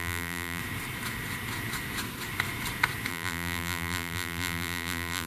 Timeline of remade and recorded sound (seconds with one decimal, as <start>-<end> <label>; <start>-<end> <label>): 0.0-0.6 remade; 0.6-3.1 recorded; 3.1-5.3 remade